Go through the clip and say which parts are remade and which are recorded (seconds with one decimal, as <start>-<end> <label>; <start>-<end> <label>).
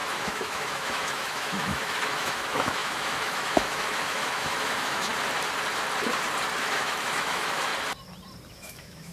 0.0-5.1 remade; 5.1-6.6 recorded; 6.6-7.7 remade; 7.7-8.5 recorded; 8.5-9.1 remade